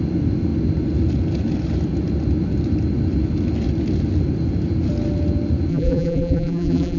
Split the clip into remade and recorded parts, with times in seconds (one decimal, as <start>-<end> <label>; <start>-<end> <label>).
0.0-5.7 recorded; 5.7-7.0 remade